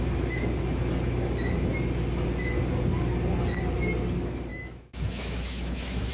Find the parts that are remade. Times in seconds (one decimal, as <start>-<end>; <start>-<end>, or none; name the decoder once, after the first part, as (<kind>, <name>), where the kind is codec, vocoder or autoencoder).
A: 4.5-6.1 (autoencoder, DAC-VAE)